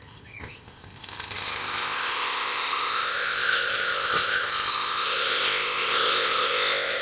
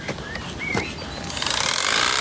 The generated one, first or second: first